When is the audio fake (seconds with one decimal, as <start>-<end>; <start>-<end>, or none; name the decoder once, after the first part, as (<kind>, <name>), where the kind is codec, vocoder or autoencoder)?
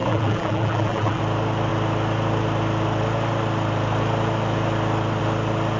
0.0-1.2 (vocoder, BigVGAN v2)